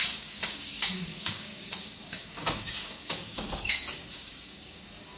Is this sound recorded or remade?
remade